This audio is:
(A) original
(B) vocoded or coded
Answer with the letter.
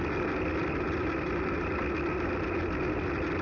A